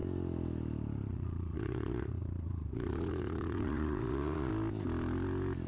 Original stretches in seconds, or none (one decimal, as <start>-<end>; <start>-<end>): 0.0-1.1; 4.5-5.7